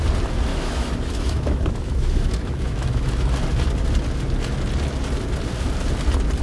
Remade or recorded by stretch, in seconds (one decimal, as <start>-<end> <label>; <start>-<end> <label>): 0.0-0.5 recorded; 0.5-3.3 remade; 3.3-6.4 recorded